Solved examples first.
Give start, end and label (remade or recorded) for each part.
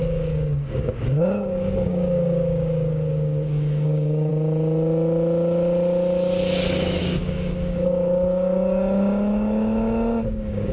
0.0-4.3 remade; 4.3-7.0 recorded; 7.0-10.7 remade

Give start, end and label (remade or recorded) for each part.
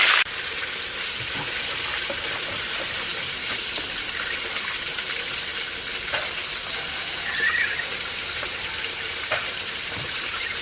0.0-5.5 remade; 5.5-6.2 recorded; 6.2-10.6 remade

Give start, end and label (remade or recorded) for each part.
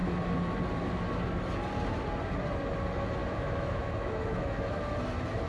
0.0-3.2 recorded; 3.2-4.7 remade; 4.7-5.5 recorded